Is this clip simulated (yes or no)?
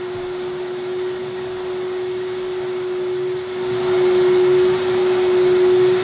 no